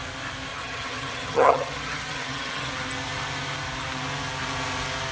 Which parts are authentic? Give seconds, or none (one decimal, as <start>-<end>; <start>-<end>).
0.0-0.5; 2.7-5.1